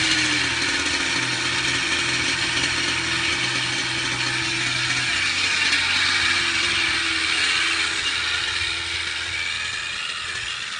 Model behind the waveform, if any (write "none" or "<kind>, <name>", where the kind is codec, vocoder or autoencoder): none